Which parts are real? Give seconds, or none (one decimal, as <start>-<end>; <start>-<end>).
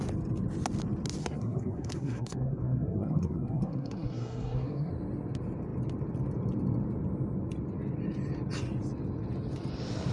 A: 0.0-1.2; 4.9-10.1